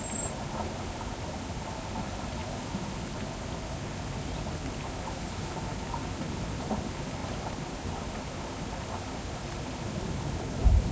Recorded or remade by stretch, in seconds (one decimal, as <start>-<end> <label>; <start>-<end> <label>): 0.0-10.9 recorded